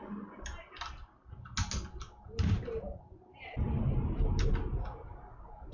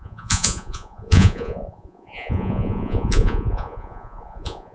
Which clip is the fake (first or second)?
second